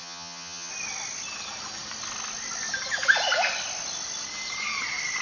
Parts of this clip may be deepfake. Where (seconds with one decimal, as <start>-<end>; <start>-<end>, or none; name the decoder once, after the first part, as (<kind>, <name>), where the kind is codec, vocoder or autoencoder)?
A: 0.0-0.7 (vocoder, HiFi-GAN)